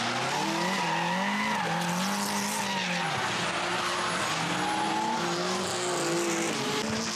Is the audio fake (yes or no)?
no